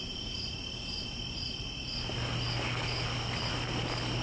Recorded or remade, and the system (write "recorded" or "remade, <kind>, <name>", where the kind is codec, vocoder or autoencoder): recorded